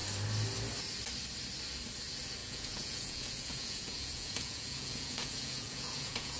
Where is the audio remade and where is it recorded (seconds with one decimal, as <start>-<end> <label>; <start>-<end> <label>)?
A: 0.0-2.4 recorded; 2.4-6.4 remade